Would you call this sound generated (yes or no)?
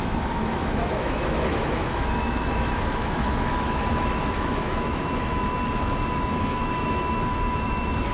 yes